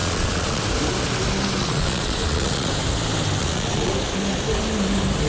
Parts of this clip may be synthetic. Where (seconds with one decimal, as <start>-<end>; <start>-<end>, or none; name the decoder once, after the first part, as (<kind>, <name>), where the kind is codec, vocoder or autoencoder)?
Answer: 0.0-0.6 (vocoder, Vocos); 1.6-2.7; 3.4-3.9

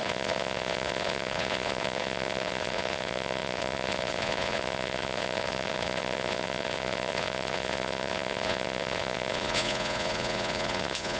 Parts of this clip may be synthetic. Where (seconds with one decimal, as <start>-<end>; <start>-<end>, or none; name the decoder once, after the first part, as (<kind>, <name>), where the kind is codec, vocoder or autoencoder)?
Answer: 0.0-11.2 (vocoder, Vocos)

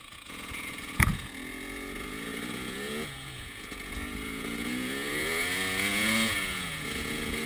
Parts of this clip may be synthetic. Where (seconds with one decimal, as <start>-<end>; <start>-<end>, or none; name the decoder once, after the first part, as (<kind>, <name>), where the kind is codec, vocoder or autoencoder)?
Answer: 0.0-7.5 (vocoder, Vocos)

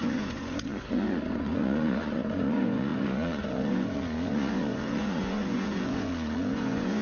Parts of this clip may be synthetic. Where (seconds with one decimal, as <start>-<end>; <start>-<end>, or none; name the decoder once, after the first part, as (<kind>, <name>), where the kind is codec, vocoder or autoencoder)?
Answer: 0.0-7.0 (vocoder, Vocos)

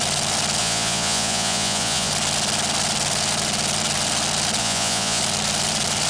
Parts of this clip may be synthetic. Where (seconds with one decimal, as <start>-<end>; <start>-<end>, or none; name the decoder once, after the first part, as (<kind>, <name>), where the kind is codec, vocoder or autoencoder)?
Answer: 0.6-2.1 (vocoder, Vocos); 4.6-5.2

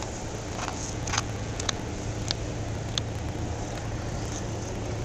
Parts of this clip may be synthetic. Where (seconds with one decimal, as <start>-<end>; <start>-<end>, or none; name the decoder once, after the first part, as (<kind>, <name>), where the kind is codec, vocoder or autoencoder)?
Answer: 0.7-1.8 (vocoder, Vocos)

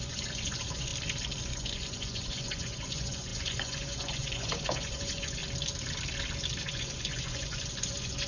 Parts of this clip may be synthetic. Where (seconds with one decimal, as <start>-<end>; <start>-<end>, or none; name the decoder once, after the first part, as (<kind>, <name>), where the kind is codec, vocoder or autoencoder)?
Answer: 0.0-0.9 (vocoder, Vocos); 1.4-5.4; 6.6-8.3